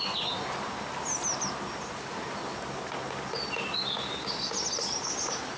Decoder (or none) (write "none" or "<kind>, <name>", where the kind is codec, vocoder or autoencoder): none